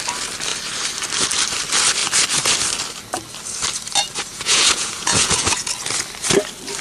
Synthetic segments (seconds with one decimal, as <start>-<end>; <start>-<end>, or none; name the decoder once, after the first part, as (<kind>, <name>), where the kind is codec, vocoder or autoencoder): 4.3-5.7 (vocoder, Vocos)